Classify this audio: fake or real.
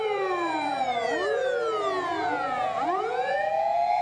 fake